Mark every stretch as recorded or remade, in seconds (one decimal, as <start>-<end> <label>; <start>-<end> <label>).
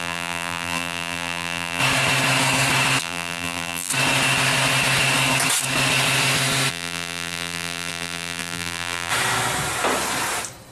0.0-1.8 remade; 1.8-3.0 recorded; 3.0-3.9 remade; 3.9-6.7 recorded; 6.7-9.1 remade; 9.1-10.7 recorded